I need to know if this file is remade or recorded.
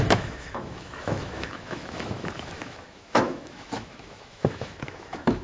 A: remade